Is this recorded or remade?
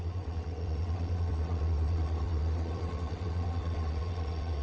remade